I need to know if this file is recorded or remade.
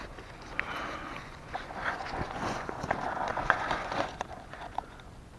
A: remade